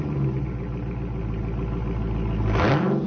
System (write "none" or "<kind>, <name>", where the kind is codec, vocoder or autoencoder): none